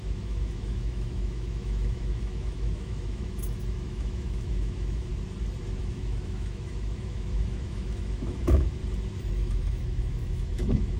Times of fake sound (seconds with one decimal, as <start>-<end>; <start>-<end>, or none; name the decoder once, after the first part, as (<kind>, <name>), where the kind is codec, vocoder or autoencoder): 0.0-5.1 (autoencoder, DAC-VAE); 5.8-8.8; 9.3-11.0